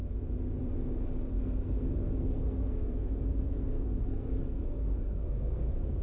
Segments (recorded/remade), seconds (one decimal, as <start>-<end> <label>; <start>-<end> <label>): 0.0-1.3 recorded; 1.3-6.0 remade